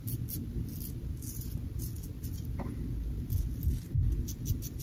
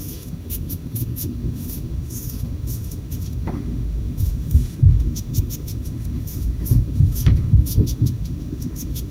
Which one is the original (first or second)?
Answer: first